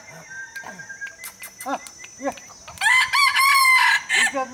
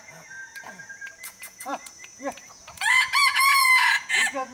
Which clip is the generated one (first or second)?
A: second